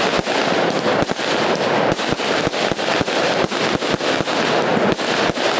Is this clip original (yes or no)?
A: yes